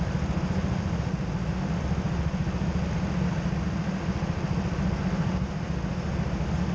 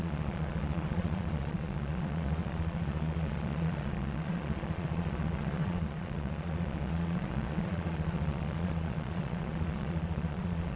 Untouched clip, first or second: first